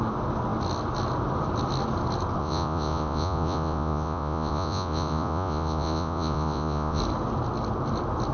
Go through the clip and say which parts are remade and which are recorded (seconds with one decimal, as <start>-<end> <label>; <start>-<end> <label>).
0.0-2.4 recorded; 2.4-7.0 remade; 7.0-8.3 recorded